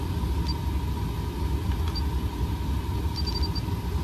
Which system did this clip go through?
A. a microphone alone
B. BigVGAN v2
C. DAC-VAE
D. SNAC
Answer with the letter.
A